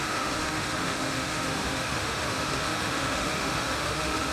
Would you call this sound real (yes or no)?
no